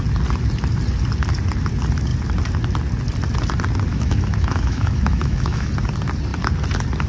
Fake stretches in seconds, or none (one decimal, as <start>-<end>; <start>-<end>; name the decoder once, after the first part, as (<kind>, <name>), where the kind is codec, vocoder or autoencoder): 3.9-5.7 (autoencoder, DAC-VAE)